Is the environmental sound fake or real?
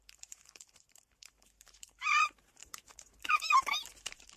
fake